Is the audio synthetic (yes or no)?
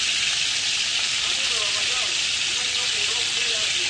no